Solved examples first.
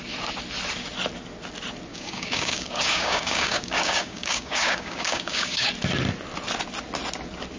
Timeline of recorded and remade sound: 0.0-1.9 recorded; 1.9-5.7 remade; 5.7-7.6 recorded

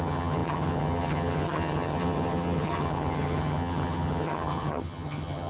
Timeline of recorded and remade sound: 0.0-5.5 remade

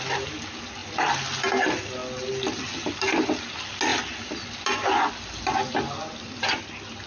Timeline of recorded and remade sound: 0.0-7.1 recorded

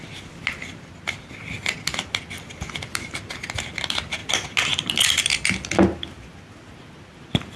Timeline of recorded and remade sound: 0.0-7.6 recorded

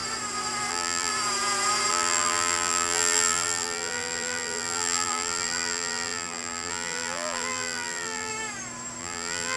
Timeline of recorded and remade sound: 0.0-0.7 recorded; 0.7-1.1 remade; 1.1-1.9 recorded; 1.9-8.3 remade; 8.3-9.0 recorded; 9.0-9.6 remade

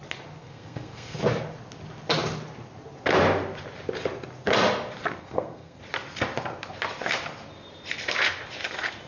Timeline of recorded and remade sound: 0.0-0.4 recorded; 0.4-1.2 remade; 1.2-5.2 recorded; 5.2-5.8 remade; 5.8-9.1 recorded

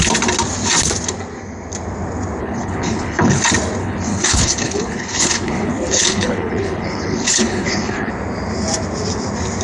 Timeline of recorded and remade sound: 0.0-2.4 recorded; 2.4-3.4 remade; 3.4-3.8 recorded; 3.8-8.1 remade; 8.1-9.6 recorded

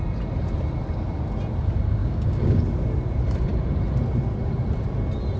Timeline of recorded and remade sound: 0.0-2.0 recorded; 2.0-2.6 remade; 2.6-5.4 recorded